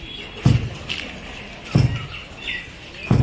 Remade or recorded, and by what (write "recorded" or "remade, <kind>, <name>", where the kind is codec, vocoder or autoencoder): recorded